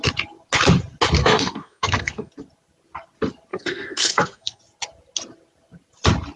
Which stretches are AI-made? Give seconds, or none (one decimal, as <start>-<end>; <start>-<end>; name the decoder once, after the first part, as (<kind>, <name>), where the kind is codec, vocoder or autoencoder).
1.2-2.3 (codec, SNAC); 3.5-4.6

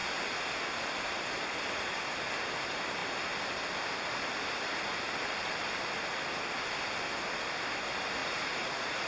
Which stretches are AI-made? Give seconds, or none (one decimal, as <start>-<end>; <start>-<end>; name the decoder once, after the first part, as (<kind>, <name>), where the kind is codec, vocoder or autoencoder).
8.2-9.1 (vocoder, Vocos)

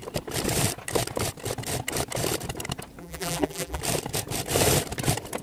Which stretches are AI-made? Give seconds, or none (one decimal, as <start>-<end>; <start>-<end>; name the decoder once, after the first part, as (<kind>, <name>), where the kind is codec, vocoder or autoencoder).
3.0-3.8 (vocoder, BigVGAN v2)

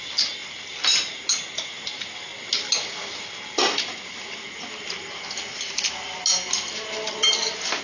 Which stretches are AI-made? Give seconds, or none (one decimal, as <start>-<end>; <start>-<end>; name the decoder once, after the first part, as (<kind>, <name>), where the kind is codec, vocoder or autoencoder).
none

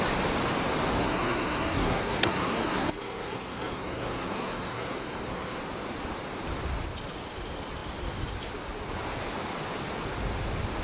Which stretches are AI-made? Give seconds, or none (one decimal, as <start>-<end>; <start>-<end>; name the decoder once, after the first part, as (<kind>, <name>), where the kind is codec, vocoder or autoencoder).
1.0-5.6 (codec, SNAC)

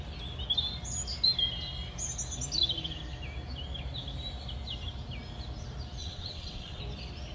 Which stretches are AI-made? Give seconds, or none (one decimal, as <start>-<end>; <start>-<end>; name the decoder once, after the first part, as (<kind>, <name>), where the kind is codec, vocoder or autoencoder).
6.0-6.8 (vocoder, WaveNeXt)

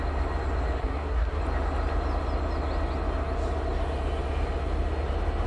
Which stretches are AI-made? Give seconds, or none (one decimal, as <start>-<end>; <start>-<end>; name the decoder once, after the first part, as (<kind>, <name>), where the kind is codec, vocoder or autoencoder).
0.8-1.4 (codec, SNAC)

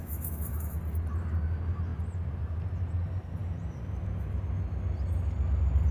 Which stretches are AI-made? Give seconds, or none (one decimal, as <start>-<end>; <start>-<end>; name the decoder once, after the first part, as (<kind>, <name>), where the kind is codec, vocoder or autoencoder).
0.0-0.8 (autoencoder, DAC-VAE)